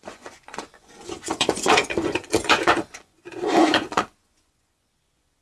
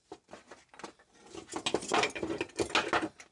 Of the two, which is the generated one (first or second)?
first